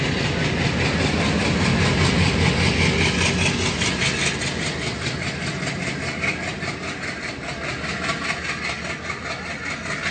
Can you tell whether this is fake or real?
real